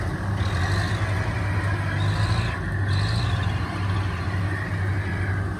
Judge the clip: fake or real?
real